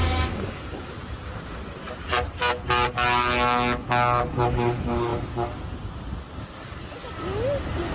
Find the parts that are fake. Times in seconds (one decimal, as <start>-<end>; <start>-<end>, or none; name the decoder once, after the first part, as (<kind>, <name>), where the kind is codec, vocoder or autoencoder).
0.0-0.9 (codec, DAC)